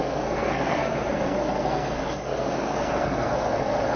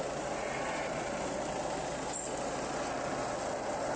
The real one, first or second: second